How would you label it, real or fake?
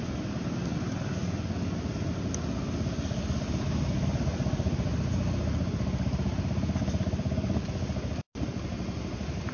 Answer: real